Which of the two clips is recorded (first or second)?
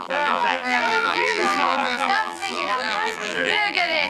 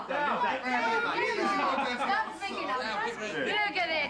second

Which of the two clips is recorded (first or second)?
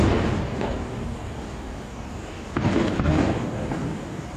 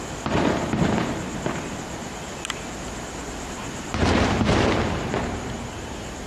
second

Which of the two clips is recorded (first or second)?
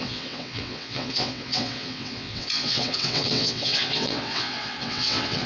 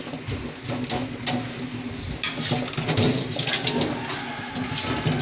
second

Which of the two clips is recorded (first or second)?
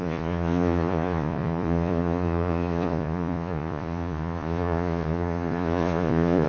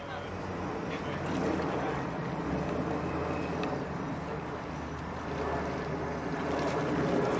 second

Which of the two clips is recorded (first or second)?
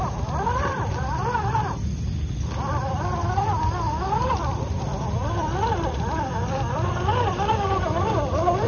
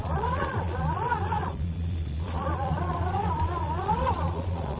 first